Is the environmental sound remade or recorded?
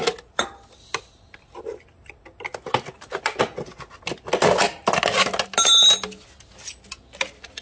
recorded